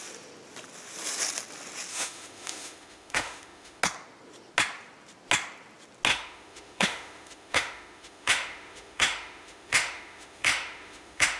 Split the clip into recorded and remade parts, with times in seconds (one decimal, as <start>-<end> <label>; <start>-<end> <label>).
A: 0.0-1.9 recorded; 1.9-3.8 remade; 3.8-6.1 recorded; 6.1-11.4 remade